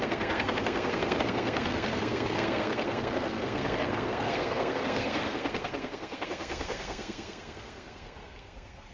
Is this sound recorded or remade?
remade